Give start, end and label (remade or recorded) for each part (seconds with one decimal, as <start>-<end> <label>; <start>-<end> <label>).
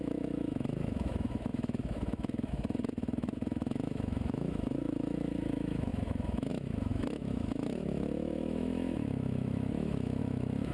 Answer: 0.0-10.7 remade